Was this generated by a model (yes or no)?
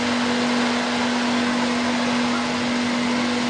no